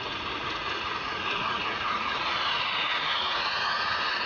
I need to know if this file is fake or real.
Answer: fake